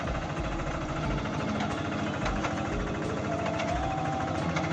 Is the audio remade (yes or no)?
yes